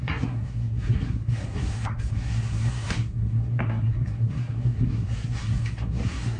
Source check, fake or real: fake